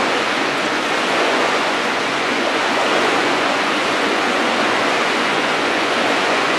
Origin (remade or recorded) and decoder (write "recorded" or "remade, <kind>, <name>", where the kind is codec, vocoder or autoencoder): remade, vocoder, Vocos